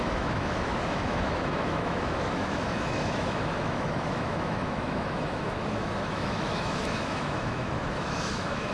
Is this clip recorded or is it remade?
remade